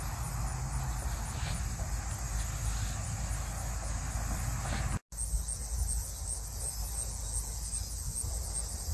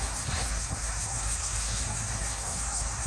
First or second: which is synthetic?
second